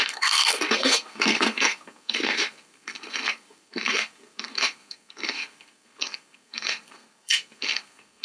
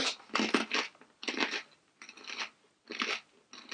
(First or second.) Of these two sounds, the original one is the second